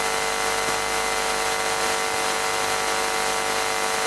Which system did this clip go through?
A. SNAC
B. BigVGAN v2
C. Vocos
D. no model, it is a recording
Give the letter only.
D